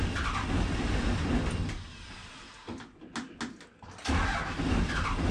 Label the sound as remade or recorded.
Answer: recorded